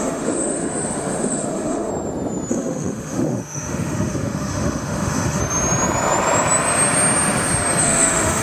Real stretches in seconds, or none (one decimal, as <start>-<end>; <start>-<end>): 1.9-2.5; 5.4-7.8